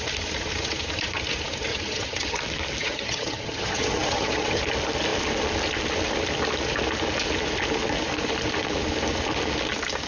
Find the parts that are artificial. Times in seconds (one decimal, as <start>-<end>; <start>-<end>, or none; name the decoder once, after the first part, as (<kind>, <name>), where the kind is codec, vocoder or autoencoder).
1.7-2.4 (vocoder, HiFi-GAN); 2.8-4.6